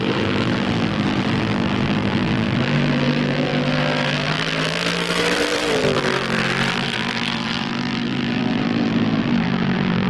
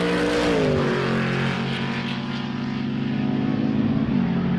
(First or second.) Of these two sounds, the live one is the second